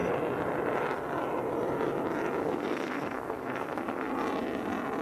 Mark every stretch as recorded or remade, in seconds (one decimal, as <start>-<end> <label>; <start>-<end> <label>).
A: 0.0-2.4 recorded; 2.4-4.1 remade; 4.1-5.0 recorded